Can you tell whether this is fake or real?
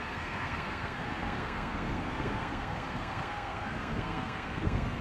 fake